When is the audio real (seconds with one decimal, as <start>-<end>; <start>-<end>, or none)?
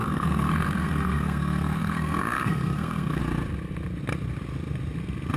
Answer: 3.2-5.4